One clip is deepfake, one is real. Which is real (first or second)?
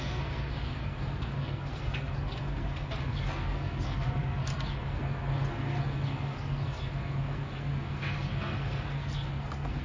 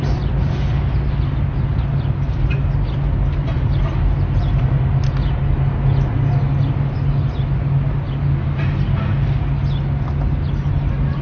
second